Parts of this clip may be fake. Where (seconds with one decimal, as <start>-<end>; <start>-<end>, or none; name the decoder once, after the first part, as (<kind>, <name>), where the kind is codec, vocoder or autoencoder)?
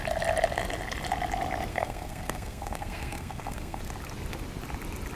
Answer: 1.7-3.8 (codec, SNAC)